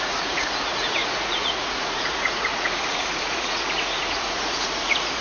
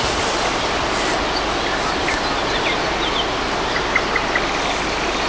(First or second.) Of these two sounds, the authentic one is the second